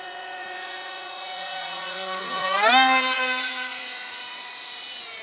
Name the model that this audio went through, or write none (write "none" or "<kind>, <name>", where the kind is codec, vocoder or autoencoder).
vocoder, Vocos